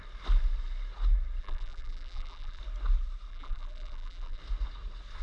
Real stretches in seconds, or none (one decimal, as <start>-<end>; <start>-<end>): 0.0-1.4; 2.6-3.3; 4.4-5.2